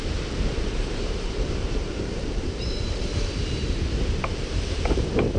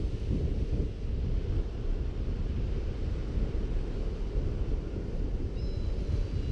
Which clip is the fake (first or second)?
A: first